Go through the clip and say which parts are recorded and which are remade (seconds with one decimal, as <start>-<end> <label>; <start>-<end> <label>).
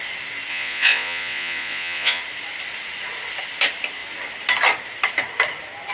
0.0-0.5 recorded; 0.5-2.2 remade; 2.2-5.9 recorded